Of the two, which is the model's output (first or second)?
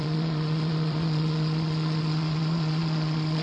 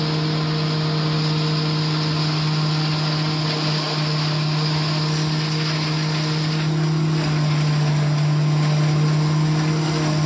first